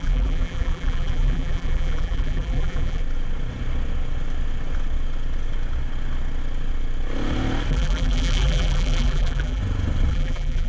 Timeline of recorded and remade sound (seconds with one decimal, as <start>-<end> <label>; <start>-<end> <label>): 0.0-3.0 remade; 3.0-7.7 recorded; 7.7-9.6 remade; 9.6-10.1 recorded; 10.1-10.7 remade